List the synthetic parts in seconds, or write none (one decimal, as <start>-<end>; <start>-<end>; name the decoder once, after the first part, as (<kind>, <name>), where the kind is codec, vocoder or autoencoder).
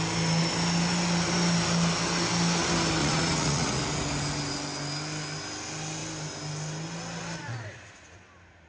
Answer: 3.0-3.8 (vocoder, Vocos)